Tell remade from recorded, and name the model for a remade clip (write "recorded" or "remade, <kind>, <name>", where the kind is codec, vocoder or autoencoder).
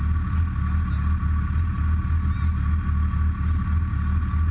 recorded